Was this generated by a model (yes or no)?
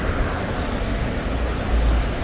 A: no